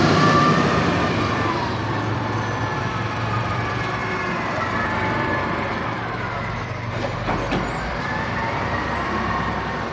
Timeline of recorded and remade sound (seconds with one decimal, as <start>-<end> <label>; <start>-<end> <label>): 0.0-2.6 remade; 2.6-3.4 recorded; 3.4-4.0 remade; 4.0-7.7 recorded; 7.7-9.9 remade